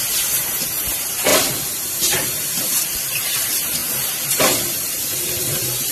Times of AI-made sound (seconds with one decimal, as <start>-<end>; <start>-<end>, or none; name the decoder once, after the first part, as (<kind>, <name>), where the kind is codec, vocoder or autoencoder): 0.0-1.3 (vocoder, BigVGAN v2); 1.9-5.9